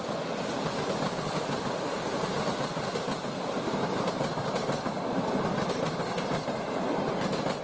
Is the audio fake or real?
real